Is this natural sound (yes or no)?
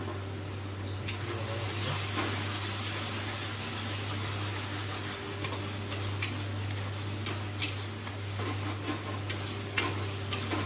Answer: yes